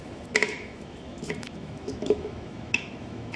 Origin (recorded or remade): remade